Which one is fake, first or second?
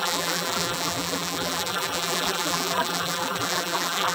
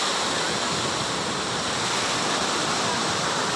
first